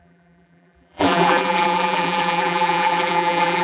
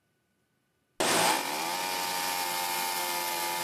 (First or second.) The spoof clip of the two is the first